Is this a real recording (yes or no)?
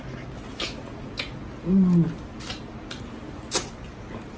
yes